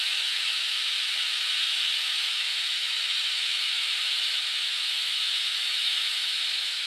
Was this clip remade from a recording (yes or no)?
yes